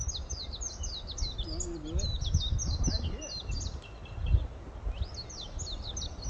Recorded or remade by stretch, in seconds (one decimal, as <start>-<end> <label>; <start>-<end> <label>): 0.0-6.3 recorded